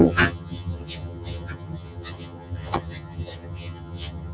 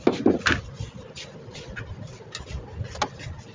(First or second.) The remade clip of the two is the first